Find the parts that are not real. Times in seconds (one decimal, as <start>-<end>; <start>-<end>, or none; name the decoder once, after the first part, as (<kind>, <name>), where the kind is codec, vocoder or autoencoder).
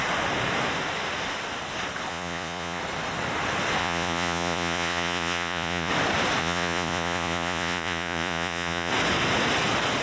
2.1-2.8 (vocoder, Vocos); 3.8-5.9; 6.4-8.9